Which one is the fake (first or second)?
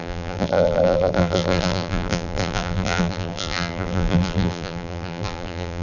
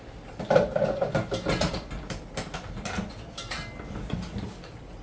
first